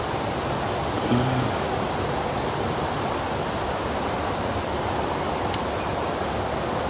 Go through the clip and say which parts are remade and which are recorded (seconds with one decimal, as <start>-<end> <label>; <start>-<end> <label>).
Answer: 0.0-6.9 recorded